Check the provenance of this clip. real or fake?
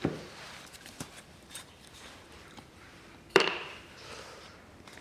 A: fake